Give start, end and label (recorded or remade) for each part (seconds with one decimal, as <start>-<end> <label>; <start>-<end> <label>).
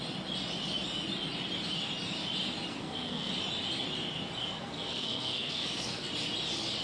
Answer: 0.0-2.7 recorded; 2.7-3.3 remade; 3.3-4.4 recorded; 4.4-6.1 remade; 6.1-6.8 recorded